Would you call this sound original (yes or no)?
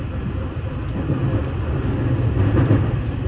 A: yes